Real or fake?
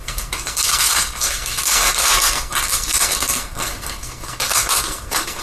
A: fake